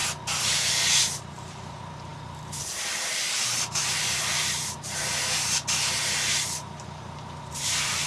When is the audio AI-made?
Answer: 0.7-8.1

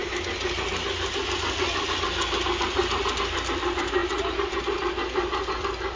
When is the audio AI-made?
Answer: none

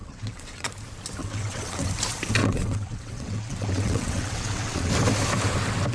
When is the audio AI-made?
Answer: 0.0-0.7; 1.2-1.9; 2.4-4.9

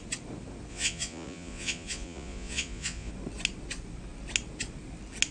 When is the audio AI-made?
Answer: 0.7-3.1

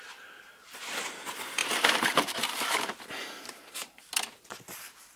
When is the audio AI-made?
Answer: 1.6-4.0